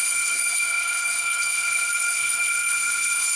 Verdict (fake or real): fake